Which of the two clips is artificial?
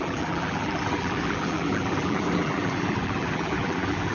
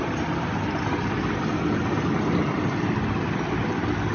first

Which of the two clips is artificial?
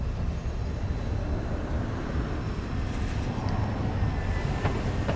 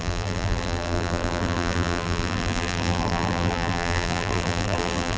second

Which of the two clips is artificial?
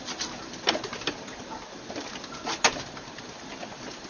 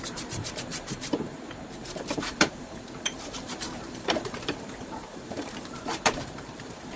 second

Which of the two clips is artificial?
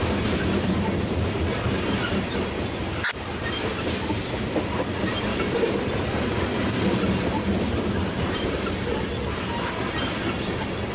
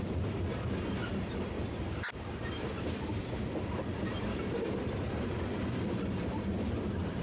second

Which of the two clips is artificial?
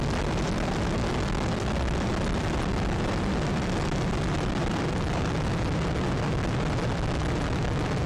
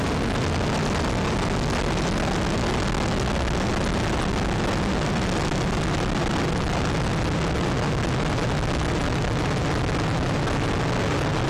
first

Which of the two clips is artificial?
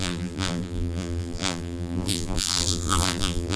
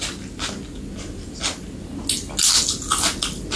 first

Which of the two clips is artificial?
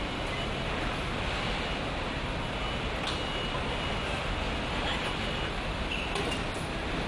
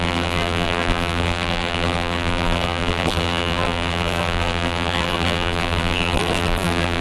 second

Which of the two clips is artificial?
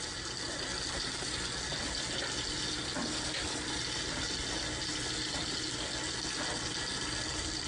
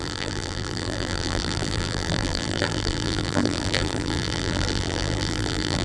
second